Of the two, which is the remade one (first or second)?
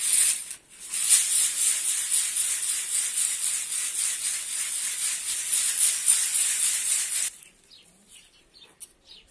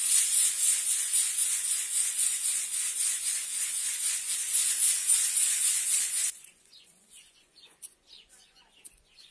second